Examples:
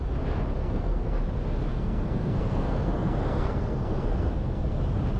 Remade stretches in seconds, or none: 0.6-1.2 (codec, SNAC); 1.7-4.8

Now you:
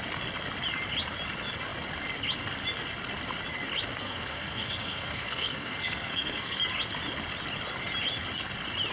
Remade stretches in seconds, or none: 4.0-6.6 (codec, SNAC)

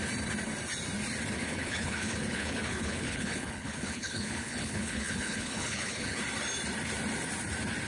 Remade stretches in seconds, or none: 1.5-6.2 (codec, HILCodec)